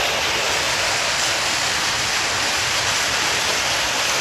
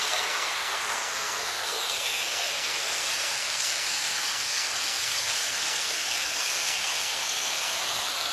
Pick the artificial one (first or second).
second